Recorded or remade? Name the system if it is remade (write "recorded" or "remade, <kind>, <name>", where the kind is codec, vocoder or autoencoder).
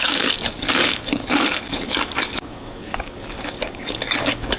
remade, codec, DAC